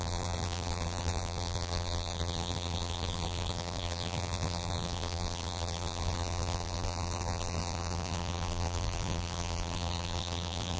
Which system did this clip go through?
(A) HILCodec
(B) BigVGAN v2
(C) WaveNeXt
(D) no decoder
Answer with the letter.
B